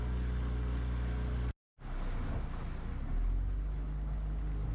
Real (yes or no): yes